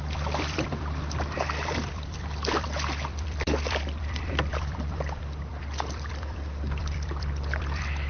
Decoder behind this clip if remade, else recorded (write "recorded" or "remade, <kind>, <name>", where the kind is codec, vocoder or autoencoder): remade, vocoder, BigVGAN v2